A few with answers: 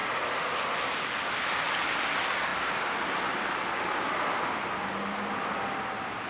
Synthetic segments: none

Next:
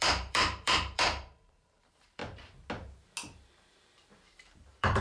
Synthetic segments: 0.0-2.2 (vocoder, BigVGAN v2); 3.7-5.0

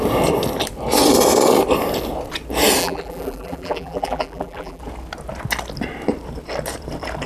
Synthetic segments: 2.8-4.8 (vocoder, BigVGAN v2)